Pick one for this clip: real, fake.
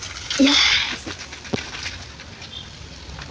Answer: real